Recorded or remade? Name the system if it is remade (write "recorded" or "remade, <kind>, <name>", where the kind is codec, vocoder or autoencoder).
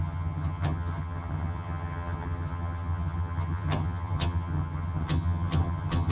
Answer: remade, vocoder, HiFi-GAN